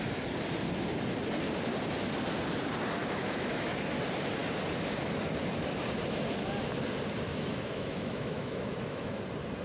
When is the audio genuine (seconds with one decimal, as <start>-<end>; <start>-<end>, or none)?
0.0-3.0; 3.7-7.3; 9.2-9.6